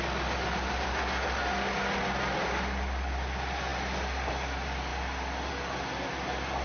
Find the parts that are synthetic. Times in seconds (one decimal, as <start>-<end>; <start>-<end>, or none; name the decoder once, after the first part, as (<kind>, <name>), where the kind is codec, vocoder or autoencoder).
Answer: none